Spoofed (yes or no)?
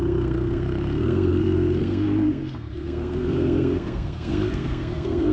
yes